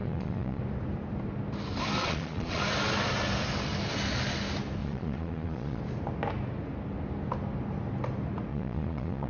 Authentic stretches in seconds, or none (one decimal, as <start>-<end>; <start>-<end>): 0.6-2.0; 2.6-4.8; 5.8-8.5